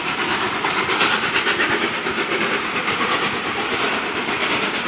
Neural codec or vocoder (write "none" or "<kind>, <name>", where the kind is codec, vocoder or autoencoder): vocoder, BigVGAN v2